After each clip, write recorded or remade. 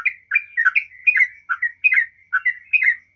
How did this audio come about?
recorded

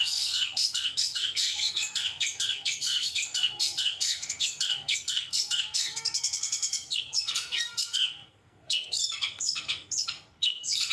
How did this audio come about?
remade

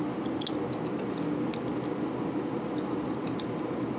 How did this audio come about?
recorded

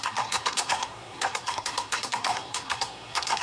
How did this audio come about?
remade